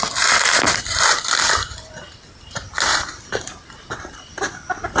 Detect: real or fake real